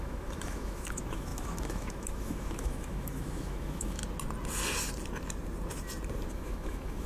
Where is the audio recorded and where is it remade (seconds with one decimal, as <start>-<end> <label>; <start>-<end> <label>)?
0.0-4.0 remade; 4.0-6.3 recorded; 6.3-7.1 remade